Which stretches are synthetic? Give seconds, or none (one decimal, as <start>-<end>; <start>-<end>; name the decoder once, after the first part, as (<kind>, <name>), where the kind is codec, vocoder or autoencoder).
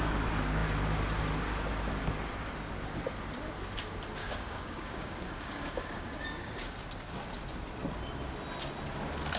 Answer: 4.2-6.8 (codec, DAC)